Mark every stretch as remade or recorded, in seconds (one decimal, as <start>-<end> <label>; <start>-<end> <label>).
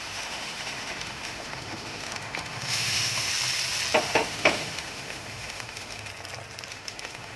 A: 0.0-3.3 remade; 3.3-4.0 recorded; 4.0-6.1 remade; 6.1-6.7 recorded; 6.7-7.4 remade